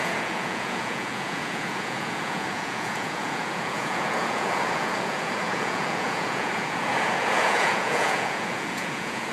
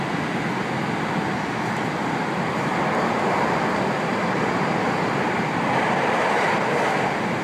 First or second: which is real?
second